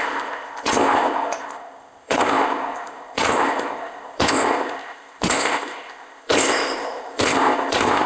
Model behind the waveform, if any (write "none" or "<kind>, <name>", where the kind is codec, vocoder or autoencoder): codec, ZipCodec